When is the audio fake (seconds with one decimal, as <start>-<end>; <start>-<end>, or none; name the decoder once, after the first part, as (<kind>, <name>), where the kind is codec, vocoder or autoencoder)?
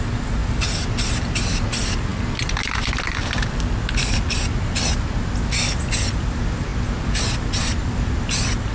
none